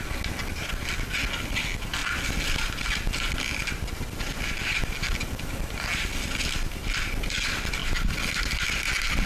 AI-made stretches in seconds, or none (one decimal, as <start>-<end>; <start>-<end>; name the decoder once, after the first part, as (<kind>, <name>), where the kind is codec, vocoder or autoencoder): none